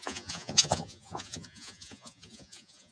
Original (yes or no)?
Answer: no